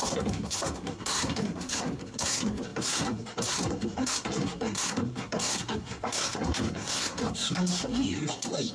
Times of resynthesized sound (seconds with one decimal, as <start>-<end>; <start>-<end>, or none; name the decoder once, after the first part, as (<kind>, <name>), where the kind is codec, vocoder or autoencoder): 0.0-8.7 (codec, SNAC)